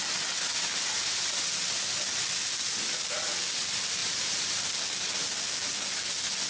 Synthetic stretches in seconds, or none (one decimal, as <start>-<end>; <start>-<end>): 4.0-4.7

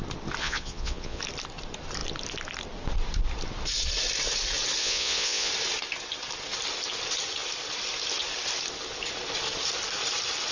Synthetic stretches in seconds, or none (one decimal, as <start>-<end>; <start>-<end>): 0.4-1.2; 4.8-5.5

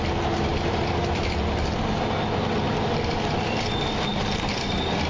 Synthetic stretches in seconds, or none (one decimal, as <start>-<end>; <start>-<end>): none

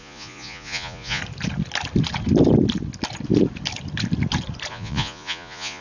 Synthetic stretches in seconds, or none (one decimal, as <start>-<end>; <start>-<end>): 0.0-1.2; 4.7-5.8